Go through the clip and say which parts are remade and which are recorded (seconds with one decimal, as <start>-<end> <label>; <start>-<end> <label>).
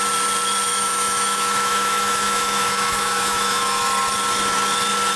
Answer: 0.0-0.7 recorded; 0.7-3.8 remade; 3.8-5.2 recorded